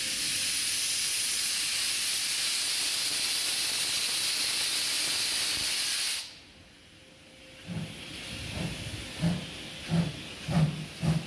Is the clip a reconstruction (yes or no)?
no